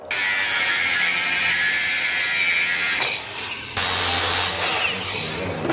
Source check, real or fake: real